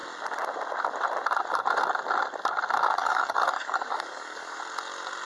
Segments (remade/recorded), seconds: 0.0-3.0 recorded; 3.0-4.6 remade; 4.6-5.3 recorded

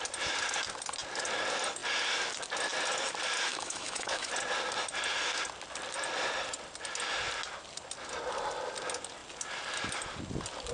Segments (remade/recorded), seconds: 0.0-3.5 recorded; 3.5-4.3 remade; 4.3-10.7 recorded